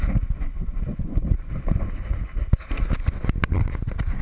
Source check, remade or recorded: recorded